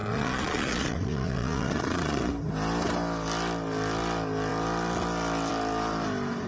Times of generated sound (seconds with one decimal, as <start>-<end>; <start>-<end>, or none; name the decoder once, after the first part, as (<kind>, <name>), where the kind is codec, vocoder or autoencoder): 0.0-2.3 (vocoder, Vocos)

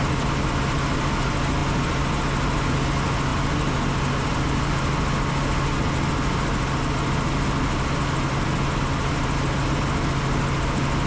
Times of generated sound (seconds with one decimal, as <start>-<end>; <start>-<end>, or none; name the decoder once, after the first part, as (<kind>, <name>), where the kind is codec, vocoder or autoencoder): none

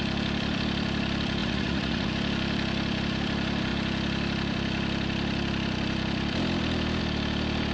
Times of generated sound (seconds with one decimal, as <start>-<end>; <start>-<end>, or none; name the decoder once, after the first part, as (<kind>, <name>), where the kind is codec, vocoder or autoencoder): 1.4-2.1 (vocoder, Vocos)